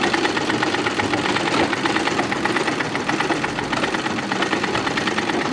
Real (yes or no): yes